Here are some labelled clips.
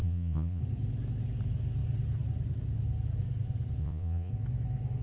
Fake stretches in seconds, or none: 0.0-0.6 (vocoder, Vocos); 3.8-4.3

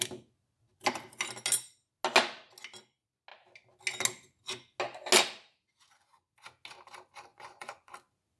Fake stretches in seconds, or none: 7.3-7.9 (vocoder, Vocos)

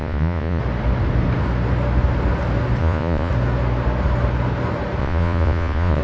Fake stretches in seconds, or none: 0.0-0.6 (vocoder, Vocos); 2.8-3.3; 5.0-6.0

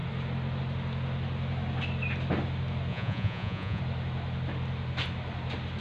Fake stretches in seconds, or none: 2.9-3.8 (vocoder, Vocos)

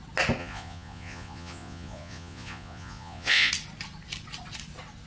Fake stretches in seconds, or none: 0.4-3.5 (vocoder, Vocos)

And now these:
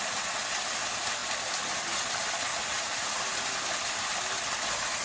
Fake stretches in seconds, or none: 2.5-3.2 (vocoder, Vocos)